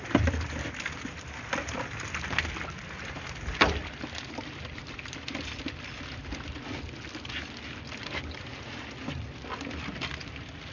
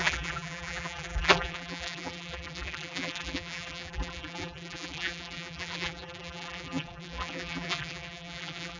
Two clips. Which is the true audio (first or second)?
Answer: first